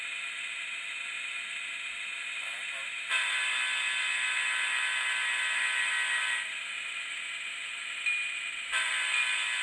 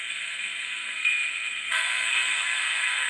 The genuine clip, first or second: first